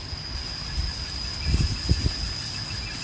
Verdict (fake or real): real